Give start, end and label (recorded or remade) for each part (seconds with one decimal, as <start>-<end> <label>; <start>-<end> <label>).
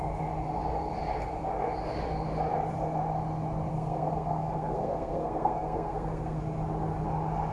0.0-3.7 recorded; 3.7-6.4 remade; 6.4-7.5 recorded